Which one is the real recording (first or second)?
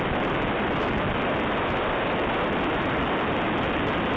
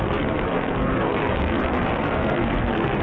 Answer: first